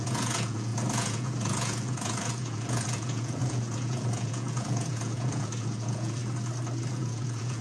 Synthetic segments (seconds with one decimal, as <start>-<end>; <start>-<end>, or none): 0.0-6.2; 6.9-7.6